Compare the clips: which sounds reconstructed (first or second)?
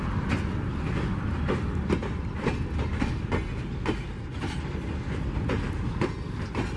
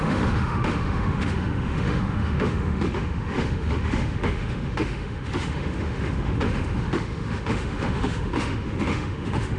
second